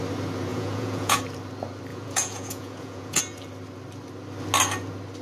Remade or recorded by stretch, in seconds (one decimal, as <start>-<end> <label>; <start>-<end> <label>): 0.0-0.5 recorded; 0.5-1.2 remade; 1.2-1.9 recorded; 1.9-3.2 remade; 3.2-5.2 recorded